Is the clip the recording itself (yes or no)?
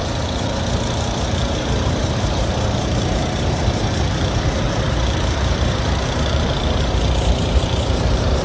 no